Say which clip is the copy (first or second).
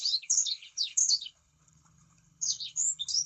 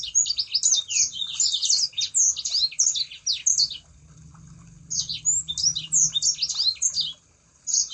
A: first